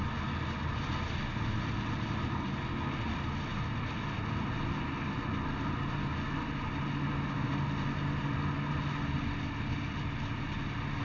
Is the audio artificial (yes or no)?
no